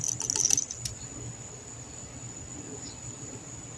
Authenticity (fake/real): real